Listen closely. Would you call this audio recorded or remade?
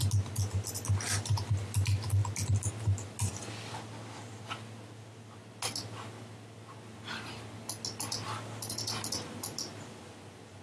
recorded